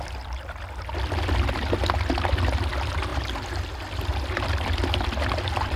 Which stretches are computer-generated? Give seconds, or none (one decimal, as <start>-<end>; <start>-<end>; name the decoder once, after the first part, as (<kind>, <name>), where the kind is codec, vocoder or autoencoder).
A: 3.1-5.8 (vocoder, BigVGAN v2)